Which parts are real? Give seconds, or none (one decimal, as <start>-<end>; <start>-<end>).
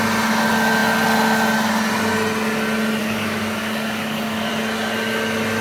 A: 0.0-3.0; 4.5-5.6